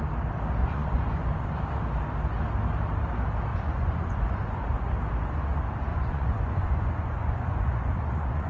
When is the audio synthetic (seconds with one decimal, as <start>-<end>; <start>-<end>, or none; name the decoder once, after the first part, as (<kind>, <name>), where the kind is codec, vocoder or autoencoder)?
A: 0.6-1.6 (vocoder, Vocos); 3.5-4.9; 5.9-8.5